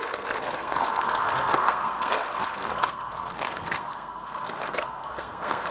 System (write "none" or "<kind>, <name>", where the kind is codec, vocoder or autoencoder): codec, SNAC